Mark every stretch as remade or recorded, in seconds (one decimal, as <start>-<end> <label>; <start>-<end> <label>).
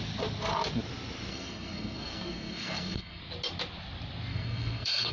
0.0-1.3 recorded; 1.3-3.2 remade; 3.2-4.3 recorded; 4.3-5.1 remade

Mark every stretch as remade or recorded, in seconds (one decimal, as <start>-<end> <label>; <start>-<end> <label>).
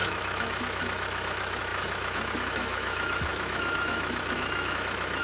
0.0-5.2 remade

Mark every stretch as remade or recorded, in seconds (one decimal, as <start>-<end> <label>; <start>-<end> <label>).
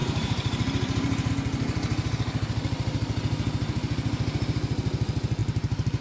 0.0-1.3 remade; 1.3-5.4 recorded; 5.4-6.0 remade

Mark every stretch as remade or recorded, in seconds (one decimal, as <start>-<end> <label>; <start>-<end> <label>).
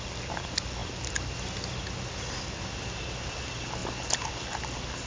0.0-5.1 recorded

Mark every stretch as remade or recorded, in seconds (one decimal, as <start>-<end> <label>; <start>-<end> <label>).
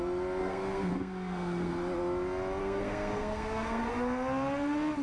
0.0-0.4 recorded; 0.4-1.7 remade; 1.7-2.6 recorded; 2.6-3.9 remade; 3.9-5.0 recorded